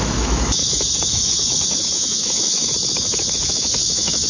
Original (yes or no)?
no